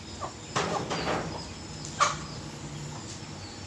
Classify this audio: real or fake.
real